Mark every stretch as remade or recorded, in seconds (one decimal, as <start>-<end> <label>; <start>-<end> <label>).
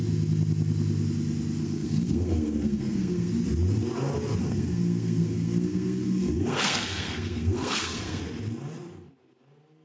0.0-1.6 recorded; 1.6-3.3 remade; 3.3-4.4 recorded; 4.4-8.2 remade; 8.2-9.8 recorded